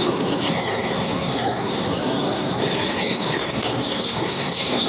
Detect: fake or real fake